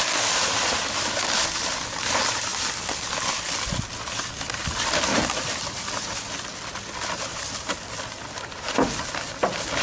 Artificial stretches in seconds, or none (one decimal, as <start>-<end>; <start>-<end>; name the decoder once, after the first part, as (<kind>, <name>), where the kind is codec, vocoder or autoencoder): none